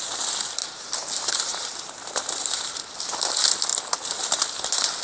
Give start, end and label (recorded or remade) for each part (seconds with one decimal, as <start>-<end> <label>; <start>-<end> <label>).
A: 0.0-0.6 recorded; 0.6-2.8 remade; 2.8-5.0 recorded